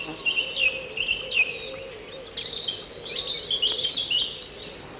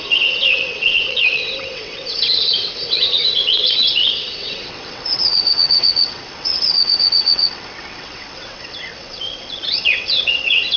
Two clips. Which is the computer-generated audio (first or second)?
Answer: second